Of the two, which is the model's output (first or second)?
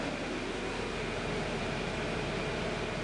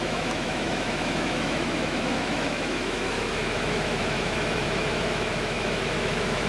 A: second